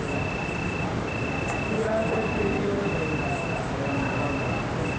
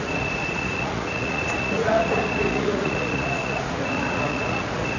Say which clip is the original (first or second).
first